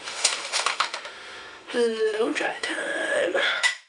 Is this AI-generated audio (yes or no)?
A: yes